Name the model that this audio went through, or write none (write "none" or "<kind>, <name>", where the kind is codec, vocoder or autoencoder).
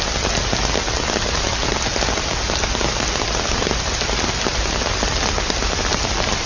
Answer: none